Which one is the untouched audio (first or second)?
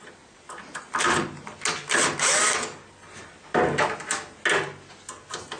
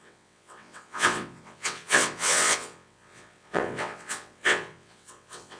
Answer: first